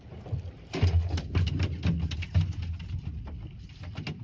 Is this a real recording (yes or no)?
yes